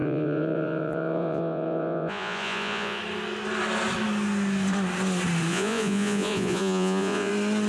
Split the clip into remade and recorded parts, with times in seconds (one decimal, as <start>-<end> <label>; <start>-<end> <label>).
0.0-3.0 remade; 3.0-5.5 recorded; 5.5-7.3 remade; 7.3-7.7 recorded